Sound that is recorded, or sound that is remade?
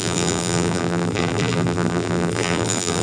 remade